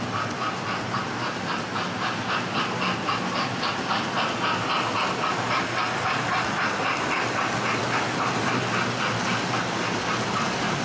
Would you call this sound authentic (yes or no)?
yes